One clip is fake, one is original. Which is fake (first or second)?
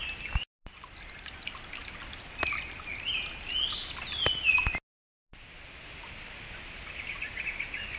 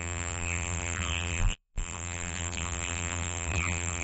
second